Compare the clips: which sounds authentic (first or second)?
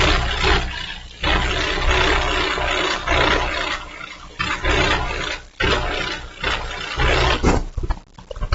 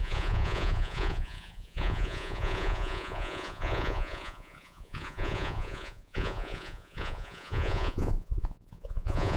first